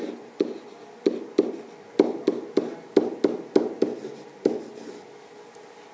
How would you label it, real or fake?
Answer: real